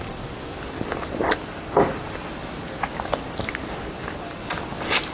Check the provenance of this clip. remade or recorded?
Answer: recorded